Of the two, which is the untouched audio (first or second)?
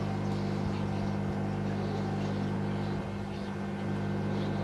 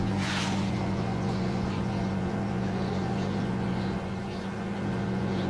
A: first